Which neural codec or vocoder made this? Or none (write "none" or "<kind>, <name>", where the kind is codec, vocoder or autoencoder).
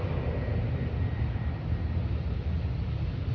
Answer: none